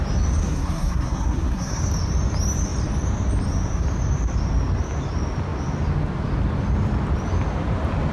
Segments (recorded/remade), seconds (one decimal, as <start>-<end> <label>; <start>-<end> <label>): 0.0-0.4 recorded; 0.4-1.8 remade; 1.8-8.1 recorded